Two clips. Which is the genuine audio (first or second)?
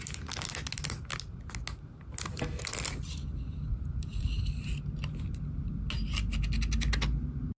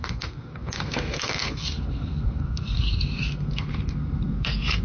first